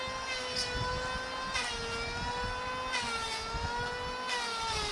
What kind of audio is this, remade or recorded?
recorded